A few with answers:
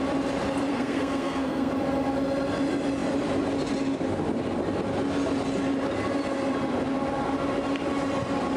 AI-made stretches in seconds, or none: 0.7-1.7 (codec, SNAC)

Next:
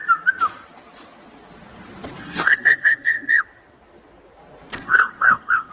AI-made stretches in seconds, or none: 2.2-3.4 (codec, SNAC); 4.7-5.7